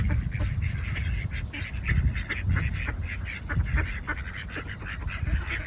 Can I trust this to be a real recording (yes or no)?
yes